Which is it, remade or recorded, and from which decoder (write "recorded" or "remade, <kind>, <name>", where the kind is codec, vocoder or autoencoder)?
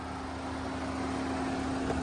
recorded